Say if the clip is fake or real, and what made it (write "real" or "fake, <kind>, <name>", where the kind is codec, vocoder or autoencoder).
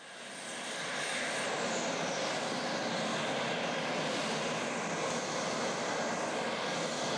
real